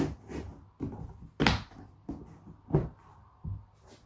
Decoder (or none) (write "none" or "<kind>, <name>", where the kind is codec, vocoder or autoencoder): none